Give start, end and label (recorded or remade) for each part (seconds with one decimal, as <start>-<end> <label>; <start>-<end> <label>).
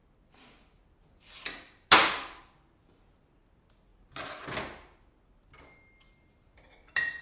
0.0-7.2 recorded